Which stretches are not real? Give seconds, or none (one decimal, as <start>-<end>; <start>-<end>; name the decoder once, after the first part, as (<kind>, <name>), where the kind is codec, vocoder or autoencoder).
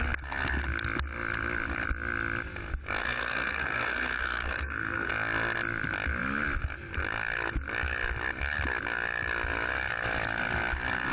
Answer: 3.0-5.1 (codec, SNAC)